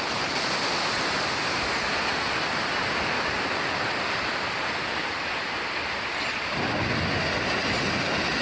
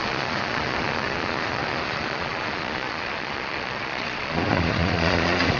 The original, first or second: first